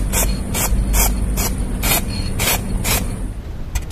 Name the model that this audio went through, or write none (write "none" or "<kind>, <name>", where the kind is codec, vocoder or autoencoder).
none